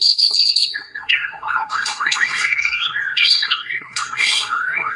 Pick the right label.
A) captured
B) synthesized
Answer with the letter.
B